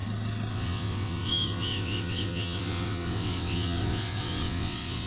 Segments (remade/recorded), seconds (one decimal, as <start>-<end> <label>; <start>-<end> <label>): 0.0-0.5 recorded; 0.5-5.1 remade